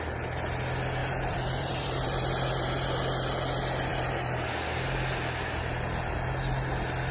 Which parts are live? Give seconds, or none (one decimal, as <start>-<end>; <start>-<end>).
0.0-1.0; 3.0-3.9; 4.5-7.1